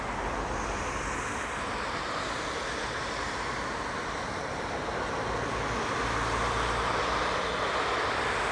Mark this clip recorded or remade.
recorded